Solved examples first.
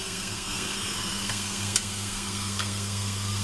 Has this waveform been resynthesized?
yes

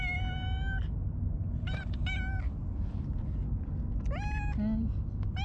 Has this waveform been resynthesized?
no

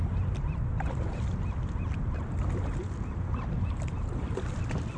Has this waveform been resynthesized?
no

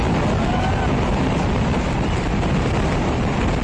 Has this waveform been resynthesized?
no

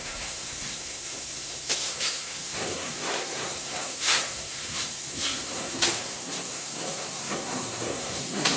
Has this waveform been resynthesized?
yes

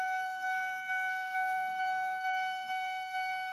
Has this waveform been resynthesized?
yes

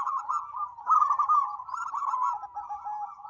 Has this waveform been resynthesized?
no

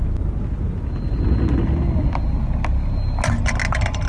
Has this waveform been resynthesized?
no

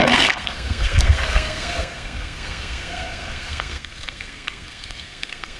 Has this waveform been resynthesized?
yes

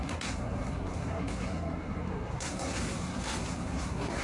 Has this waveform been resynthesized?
yes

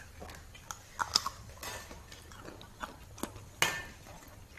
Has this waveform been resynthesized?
no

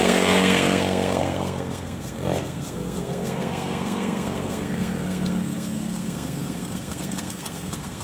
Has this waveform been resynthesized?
yes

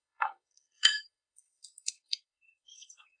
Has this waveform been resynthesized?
yes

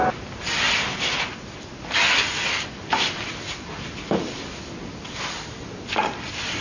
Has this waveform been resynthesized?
no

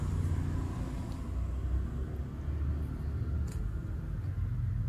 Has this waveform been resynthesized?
no